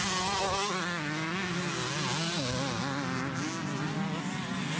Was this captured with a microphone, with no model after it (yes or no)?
yes